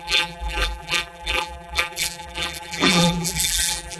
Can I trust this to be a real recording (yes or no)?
no